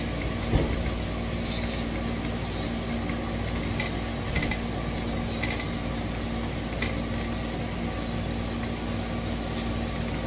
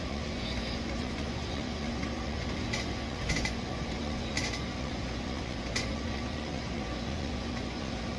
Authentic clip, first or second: first